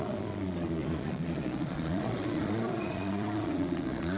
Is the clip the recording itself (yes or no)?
no